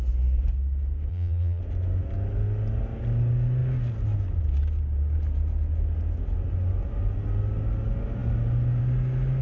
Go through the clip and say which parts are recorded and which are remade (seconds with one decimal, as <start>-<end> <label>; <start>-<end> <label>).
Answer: 0.0-1.1 recorded; 1.1-1.6 remade; 1.6-9.4 recorded